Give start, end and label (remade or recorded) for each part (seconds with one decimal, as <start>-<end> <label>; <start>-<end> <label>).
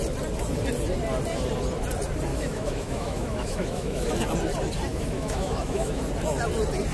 0.0-2.3 recorded; 2.3-4.1 remade; 4.1-4.9 recorded; 4.9-6.0 remade; 6.0-6.9 recorded